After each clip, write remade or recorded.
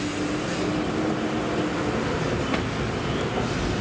recorded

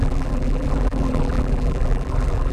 remade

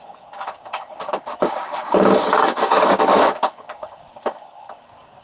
remade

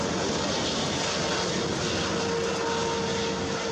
recorded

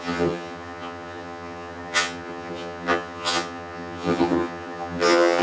remade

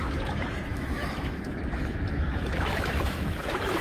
remade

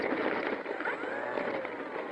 recorded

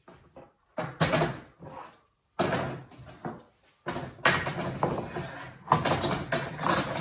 recorded